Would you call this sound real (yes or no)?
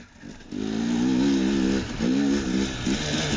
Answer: yes